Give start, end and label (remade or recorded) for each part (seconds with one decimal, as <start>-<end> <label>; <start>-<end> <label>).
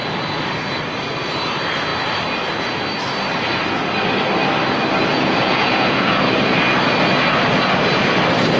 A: 0.0-5.1 recorded; 5.1-6.2 remade; 6.2-8.6 recorded